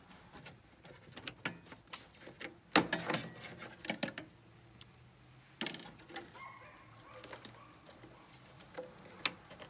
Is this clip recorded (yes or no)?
yes